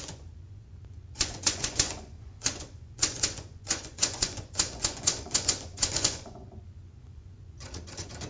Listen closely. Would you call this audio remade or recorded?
remade